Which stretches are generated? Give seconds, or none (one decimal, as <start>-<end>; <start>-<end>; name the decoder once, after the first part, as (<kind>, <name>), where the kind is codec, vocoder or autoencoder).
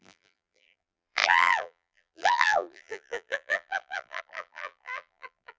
0.0-5.6 (vocoder, BigVGAN v2)